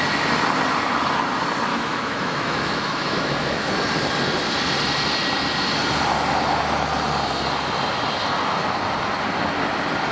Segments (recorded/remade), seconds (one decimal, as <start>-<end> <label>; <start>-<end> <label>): 0.0-1.7 recorded; 1.7-3.7 remade; 3.7-10.1 recorded